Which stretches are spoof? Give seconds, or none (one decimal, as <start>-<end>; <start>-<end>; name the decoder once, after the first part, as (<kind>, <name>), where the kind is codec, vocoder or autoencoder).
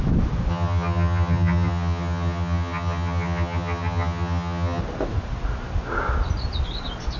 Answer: 0.5-4.8 (vocoder, HiFi-GAN)